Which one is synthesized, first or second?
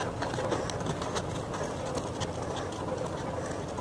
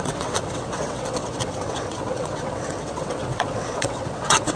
second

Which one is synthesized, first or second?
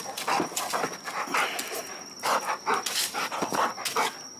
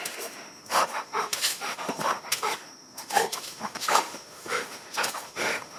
second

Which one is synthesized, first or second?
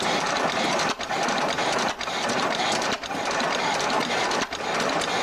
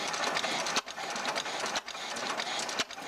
first